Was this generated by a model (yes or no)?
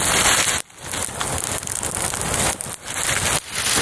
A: no